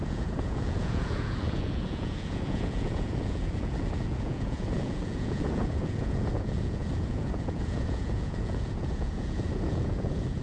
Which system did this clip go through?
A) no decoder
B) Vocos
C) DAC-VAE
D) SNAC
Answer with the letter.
B